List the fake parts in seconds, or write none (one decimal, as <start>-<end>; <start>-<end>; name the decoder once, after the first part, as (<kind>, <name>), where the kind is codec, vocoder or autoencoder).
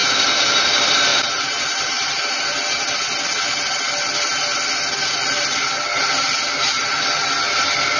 0.0-0.7 (vocoder, BigVGAN v2); 1.1-2.4